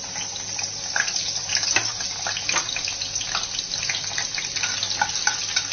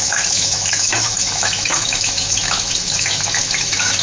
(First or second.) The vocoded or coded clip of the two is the second